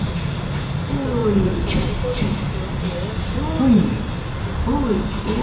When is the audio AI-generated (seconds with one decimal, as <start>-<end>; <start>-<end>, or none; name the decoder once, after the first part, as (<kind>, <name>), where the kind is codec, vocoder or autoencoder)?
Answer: none